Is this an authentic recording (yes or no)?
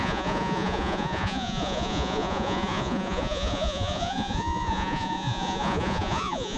no